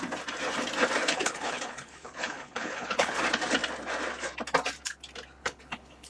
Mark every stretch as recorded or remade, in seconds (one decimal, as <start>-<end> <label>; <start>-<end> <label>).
0.0-1.0 recorded; 1.0-3.2 remade; 3.2-5.4 recorded; 5.4-6.1 remade